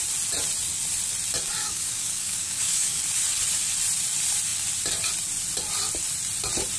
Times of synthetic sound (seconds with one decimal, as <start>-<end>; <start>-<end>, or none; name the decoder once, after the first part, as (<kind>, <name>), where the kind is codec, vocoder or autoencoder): 1.6-3.0 (codec, DAC)